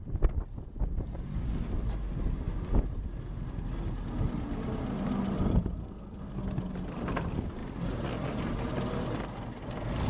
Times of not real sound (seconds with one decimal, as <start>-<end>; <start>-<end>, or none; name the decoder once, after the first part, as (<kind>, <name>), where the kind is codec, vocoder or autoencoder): 5.8-6.3 (codec, SNAC)